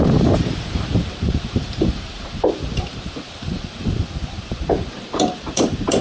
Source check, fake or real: fake